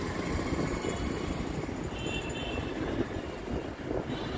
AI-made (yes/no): no